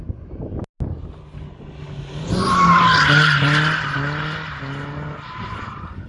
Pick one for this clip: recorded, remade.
recorded